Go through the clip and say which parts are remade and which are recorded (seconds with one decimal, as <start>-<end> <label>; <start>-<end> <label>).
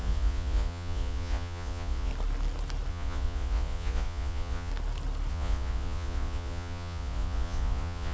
0.0-2.1 remade; 2.1-2.9 recorded; 2.9-4.7 remade; 4.7-5.3 recorded; 5.3-8.1 remade